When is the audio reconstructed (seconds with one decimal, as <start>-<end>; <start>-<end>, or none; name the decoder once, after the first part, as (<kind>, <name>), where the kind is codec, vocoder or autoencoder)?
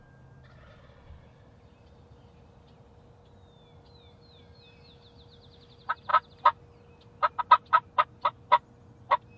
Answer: none